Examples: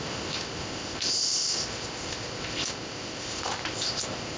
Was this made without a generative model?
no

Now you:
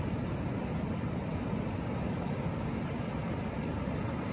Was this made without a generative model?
yes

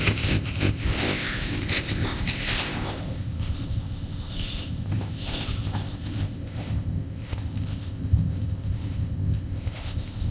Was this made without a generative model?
no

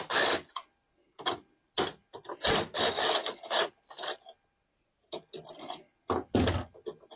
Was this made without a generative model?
yes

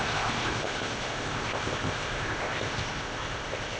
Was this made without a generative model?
no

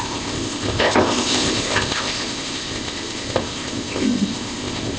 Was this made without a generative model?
no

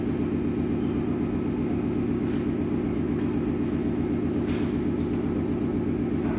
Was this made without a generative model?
yes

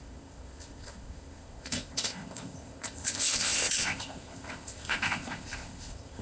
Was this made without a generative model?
no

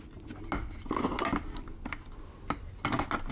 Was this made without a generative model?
yes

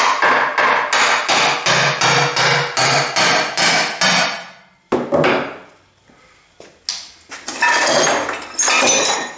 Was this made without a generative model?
yes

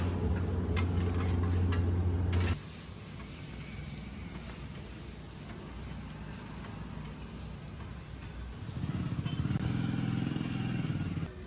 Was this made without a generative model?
yes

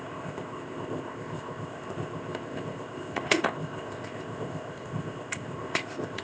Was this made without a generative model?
no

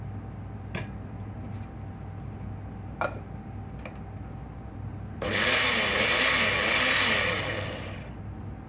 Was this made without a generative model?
yes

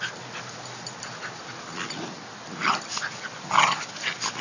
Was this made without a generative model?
yes